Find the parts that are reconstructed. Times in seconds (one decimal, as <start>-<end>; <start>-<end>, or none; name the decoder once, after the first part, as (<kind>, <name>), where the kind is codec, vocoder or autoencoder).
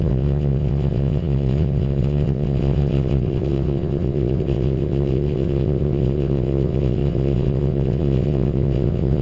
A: 0.0-9.2 (vocoder, WaveNeXt)